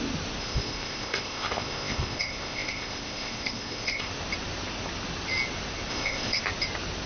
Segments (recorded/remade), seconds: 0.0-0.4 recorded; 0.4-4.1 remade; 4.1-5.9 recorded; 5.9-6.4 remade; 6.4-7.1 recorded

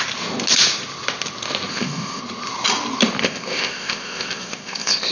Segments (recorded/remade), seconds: 0.0-1.7 recorded; 1.7-2.2 remade; 2.2-3.2 recorded; 3.2-5.1 remade

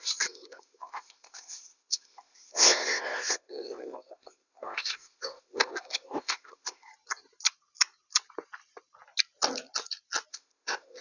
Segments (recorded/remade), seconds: 0.0-6.9 remade; 6.9-10.3 recorded; 10.3-11.0 remade

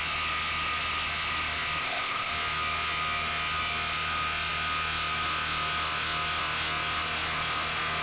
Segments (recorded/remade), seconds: 0.0-1.8 recorded; 1.8-2.3 remade; 2.3-8.0 recorded